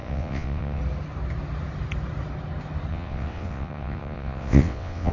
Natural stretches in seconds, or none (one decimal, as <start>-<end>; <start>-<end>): 0.8-2.9